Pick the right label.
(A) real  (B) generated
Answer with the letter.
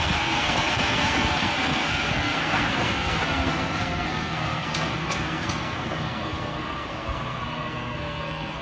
B